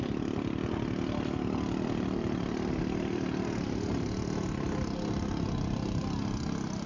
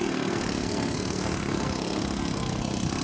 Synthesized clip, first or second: second